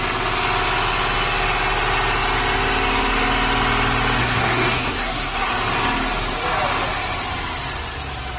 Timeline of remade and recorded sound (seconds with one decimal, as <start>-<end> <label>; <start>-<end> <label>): 0.0-4.2 recorded; 4.2-5.5 remade; 5.5-8.4 recorded